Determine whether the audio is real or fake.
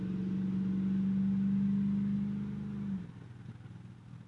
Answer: real